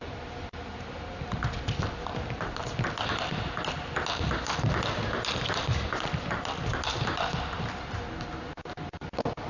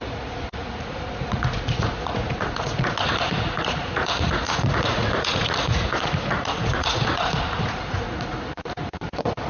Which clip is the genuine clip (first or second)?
first